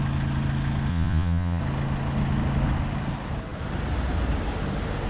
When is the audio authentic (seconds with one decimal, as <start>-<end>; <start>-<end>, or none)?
0.0-0.9; 1.6-5.1